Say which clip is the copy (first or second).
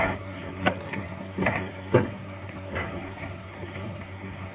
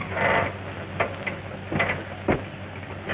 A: first